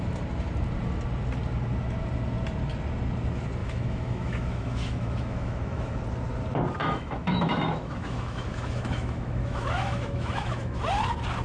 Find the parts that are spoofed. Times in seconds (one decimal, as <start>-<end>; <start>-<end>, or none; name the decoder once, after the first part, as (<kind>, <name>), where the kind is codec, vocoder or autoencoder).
3.6-6.0 (autoencoder, DAC-VAE); 6.8-10.8